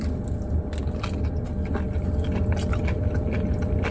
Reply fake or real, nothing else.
real